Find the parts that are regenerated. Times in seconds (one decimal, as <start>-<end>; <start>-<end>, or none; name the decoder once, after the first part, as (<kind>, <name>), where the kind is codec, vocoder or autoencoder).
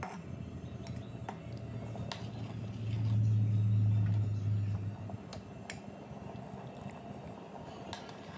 none